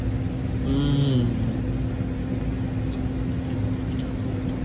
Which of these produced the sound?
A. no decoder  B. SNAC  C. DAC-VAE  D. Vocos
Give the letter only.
A